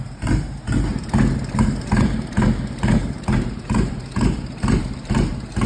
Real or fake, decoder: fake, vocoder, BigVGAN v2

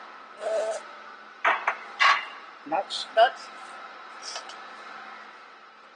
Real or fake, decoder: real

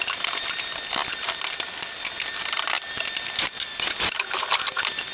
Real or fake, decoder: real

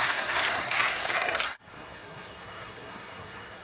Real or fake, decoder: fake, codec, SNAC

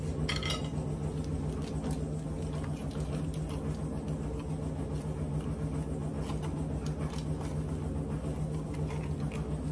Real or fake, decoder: real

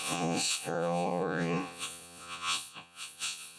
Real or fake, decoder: fake, vocoder, Vocos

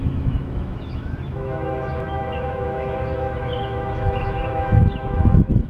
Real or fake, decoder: fake, autoencoder, DAC-VAE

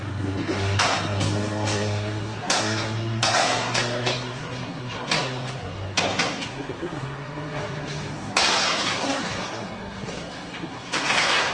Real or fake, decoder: fake, codec, SNAC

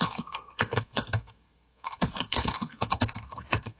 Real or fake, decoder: fake, codec, SNAC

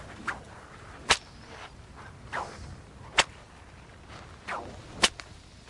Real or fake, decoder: real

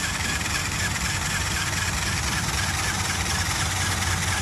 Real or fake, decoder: real